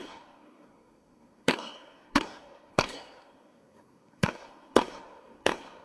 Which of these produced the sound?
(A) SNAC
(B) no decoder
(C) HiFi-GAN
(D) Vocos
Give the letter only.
A